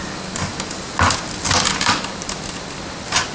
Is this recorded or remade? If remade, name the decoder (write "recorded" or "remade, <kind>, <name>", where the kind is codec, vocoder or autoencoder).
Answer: recorded